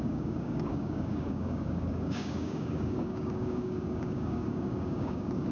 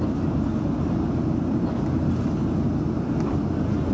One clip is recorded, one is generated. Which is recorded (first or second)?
second